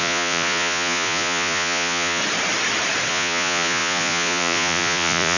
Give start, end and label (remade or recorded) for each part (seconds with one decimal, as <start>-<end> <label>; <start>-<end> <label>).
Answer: 0.0-2.2 remade; 2.2-3.1 recorded; 3.1-5.4 remade